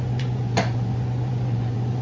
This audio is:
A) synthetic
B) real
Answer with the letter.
A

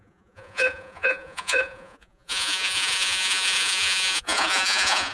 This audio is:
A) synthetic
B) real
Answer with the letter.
A